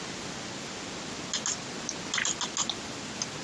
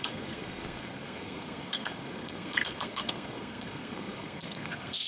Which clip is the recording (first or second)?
first